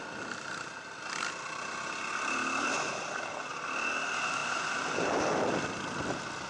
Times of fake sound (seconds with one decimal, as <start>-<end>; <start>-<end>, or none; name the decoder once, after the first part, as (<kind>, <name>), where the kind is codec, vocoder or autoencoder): none